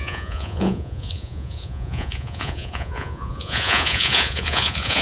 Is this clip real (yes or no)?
no